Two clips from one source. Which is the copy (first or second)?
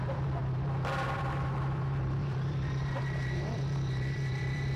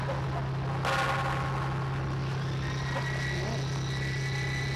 first